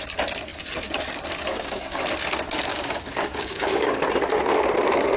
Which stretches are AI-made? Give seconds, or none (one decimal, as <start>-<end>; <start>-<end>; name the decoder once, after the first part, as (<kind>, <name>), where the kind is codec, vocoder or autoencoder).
1.5-2.0 (codec, DAC); 2.7-4.0

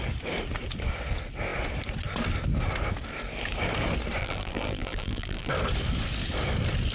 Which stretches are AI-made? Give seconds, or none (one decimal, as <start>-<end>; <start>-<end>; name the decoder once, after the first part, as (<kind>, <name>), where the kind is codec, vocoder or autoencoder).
4.2-5.5 (vocoder, BigVGAN v2)

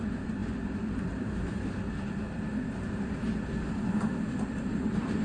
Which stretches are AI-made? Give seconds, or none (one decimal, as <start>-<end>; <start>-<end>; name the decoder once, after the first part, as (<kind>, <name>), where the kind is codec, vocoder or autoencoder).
none

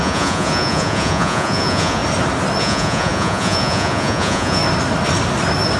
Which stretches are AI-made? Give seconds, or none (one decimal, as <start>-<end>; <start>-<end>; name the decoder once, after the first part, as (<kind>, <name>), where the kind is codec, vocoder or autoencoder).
0.0-2.0 (vocoder, Vocos); 2.6-4.6

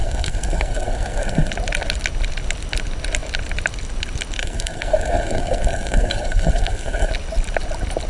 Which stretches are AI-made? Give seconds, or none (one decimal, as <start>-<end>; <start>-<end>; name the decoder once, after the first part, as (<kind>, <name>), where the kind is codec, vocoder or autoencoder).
0.0-1.5 (codec, SNAC); 4.4-7.1